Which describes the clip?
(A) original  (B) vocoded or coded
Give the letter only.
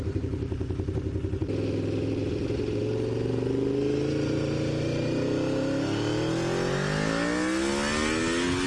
A